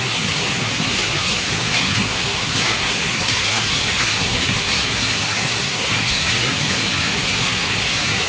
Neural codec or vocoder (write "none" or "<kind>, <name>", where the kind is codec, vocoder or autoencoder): codec, SNAC